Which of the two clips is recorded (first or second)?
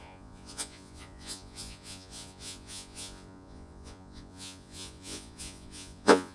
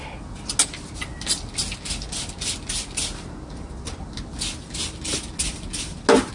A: second